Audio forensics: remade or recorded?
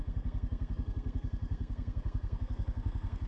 remade